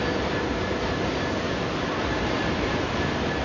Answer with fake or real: real